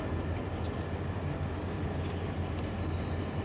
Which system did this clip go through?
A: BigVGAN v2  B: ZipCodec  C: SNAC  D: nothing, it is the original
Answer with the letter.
D